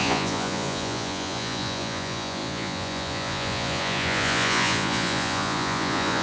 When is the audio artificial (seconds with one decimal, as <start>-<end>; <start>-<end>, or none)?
0.0-6.2